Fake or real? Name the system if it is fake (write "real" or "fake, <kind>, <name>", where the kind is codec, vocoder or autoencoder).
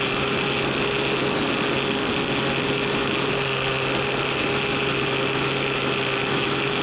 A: real